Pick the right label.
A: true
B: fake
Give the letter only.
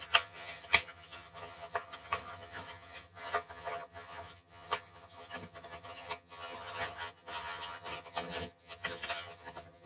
B